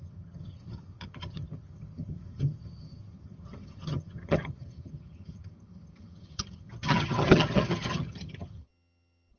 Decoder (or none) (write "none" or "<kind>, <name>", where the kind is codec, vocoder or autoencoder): vocoder, HiFi-GAN